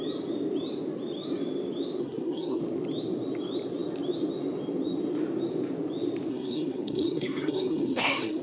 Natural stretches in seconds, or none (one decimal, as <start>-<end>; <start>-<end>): 0.0-2.0; 2.6-6.3